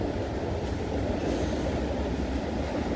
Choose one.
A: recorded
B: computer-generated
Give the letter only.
A